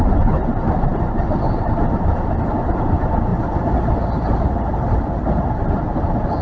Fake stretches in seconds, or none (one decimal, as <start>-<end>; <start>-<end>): none